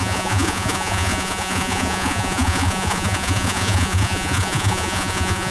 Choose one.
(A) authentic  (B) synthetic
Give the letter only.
B